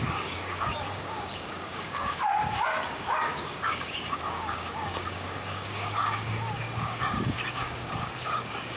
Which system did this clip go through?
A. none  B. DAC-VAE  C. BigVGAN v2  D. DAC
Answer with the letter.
D